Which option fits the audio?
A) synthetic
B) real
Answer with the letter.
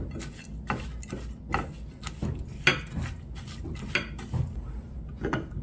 B